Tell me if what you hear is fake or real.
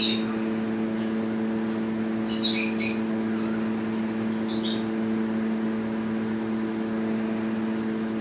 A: real